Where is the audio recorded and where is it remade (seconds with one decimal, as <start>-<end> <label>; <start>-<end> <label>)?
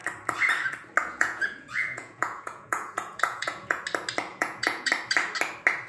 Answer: 0.0-1.0 recorded; 1.0-3.8 remade; 3.8-4.3 recorded; 4.3-4.9 remade; 4.9-5.9 recorded